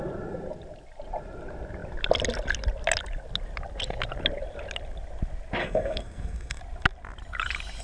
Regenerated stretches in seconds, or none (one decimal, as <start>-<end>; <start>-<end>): 5.6-6.6